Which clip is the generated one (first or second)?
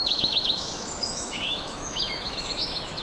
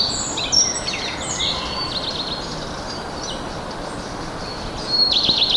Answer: first